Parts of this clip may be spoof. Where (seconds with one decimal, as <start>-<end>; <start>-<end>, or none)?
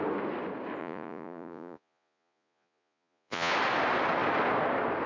0.8-3.5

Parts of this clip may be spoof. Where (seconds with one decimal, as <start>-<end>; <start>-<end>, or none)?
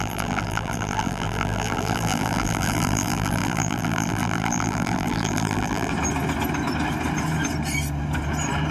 0.0-5.9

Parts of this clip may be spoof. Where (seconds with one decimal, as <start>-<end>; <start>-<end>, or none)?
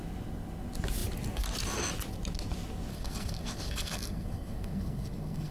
2.9-5.5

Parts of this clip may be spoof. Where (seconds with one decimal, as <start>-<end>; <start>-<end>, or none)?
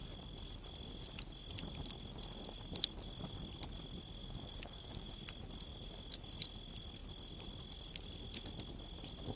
4.2-5.1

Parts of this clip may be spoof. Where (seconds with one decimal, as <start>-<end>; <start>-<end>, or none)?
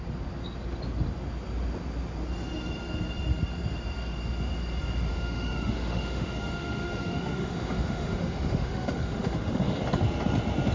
5.1-9.8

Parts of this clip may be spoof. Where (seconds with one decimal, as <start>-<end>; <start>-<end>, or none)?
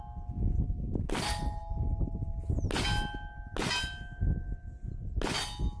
none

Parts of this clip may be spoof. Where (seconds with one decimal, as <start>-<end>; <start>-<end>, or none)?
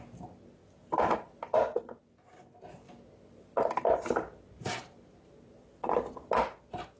none